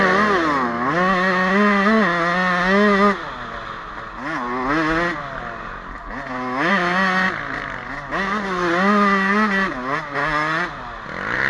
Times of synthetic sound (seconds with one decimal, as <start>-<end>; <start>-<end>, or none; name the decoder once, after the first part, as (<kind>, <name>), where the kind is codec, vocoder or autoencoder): none